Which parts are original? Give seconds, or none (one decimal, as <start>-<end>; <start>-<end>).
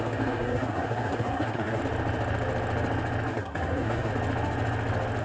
1.8-3.3; 4.1-5.2